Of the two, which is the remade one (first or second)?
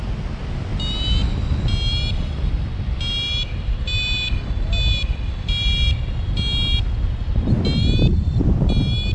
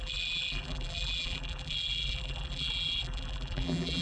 second